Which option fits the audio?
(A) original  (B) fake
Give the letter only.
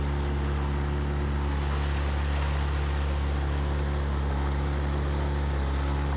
A